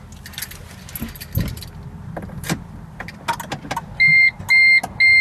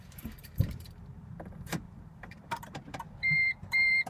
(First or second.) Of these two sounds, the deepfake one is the second